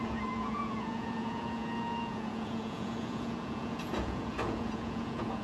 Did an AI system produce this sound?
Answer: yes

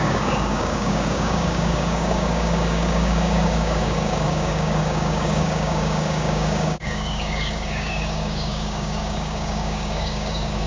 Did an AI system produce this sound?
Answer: yes